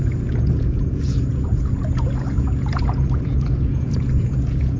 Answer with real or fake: fake